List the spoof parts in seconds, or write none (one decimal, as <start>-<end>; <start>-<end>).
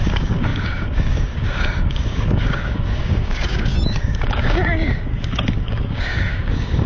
0.0-6.9